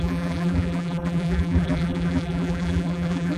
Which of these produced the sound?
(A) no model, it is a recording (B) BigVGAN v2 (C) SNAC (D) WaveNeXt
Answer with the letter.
B